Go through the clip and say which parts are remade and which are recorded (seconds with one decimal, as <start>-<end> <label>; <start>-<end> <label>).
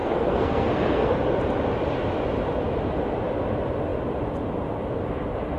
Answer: 0.0-1.1 remade; 1.1-5.6 recorded